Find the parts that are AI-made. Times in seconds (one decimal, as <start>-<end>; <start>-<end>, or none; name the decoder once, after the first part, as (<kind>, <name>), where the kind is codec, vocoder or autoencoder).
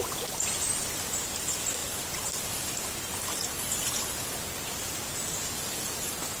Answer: none